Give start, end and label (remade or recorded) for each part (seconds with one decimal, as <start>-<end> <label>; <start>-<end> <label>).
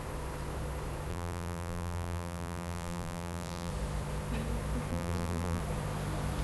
0.0-1.1 recorded; 1.1-3.7 remade; 3.7-4.9 recorded; 4.9-5.6 remade; 5.6-6.4 recorded